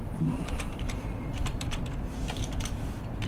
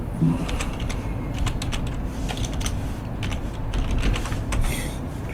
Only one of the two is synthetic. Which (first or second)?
first